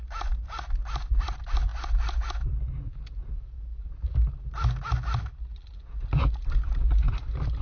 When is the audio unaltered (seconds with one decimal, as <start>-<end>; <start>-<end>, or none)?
0.0-7.6